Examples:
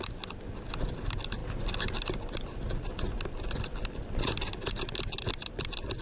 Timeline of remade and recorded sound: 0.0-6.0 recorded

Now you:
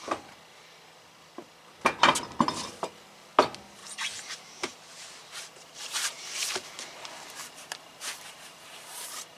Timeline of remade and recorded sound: 0.0-3.8 recorded; 3.8-9.4 remade

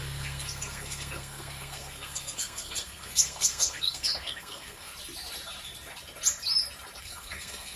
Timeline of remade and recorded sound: 0.0-4.9 remade; 4.9-7.0 recorded; 7.0-7.8 remade

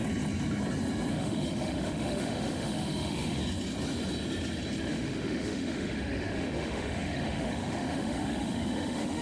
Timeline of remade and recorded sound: 0.0-1.1 recorded; 1.1-3.4 remade; 3.4-4.8 recorded; 4.8-9.2 remade